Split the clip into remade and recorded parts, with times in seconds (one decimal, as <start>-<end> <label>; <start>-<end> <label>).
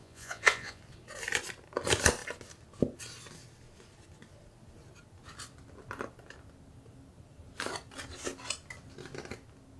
0.0-0.8 remade; 0.8-9.8 recorded